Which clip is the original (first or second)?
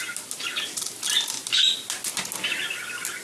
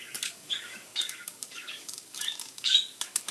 first